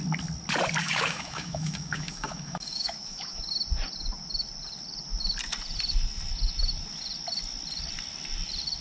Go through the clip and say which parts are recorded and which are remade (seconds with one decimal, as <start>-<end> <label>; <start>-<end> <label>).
0.0-0.8 recorded; 0.8-3.4 remade; 3.4-8.8 recorded